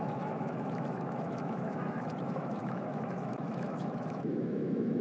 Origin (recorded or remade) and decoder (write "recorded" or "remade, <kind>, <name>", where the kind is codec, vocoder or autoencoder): remade, autoencoder, DAC-VAE